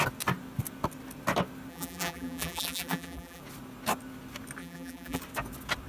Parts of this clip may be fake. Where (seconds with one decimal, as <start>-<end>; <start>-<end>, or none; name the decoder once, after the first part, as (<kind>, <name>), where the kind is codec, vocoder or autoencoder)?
1.7-3.4 (vocoder, BigVGAN v2); 4.6-5.2